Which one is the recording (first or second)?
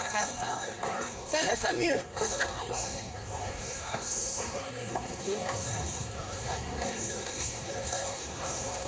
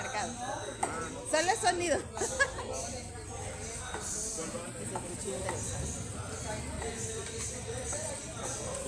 second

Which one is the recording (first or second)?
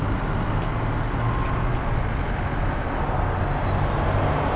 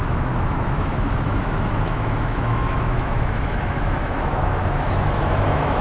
first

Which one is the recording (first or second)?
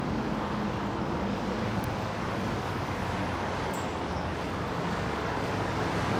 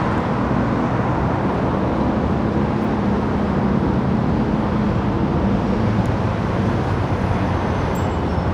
second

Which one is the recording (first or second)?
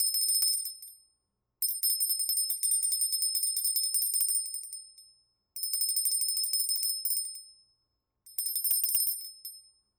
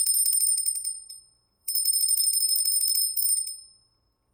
first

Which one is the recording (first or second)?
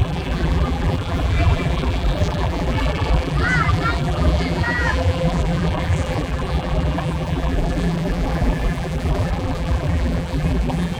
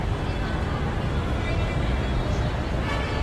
second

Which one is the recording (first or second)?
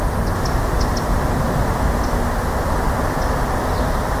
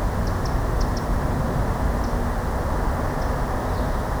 second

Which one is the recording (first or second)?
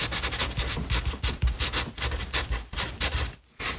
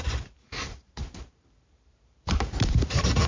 first